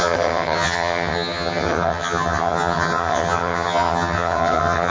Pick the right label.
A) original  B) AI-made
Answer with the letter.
B